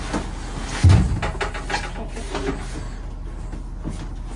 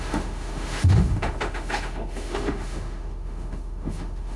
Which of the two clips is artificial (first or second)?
second